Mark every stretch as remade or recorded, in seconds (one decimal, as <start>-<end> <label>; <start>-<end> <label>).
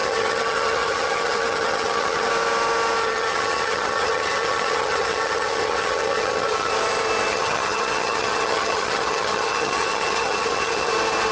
0.0-2.3 remade; 2.3-3.0 recorded; 3.0-6.7 remade; 6.7-7.3 recorded; 7.3-10.9 remade; 10.9-11.3 recorded